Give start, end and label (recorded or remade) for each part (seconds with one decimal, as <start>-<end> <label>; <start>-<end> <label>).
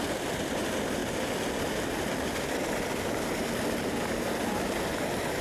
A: 0.0-5.4 recorded